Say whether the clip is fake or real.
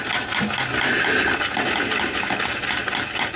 real